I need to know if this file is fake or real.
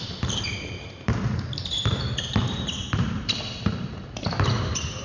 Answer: fake